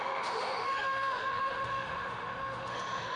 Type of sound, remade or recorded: remade